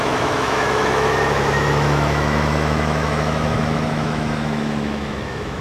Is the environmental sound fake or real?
fake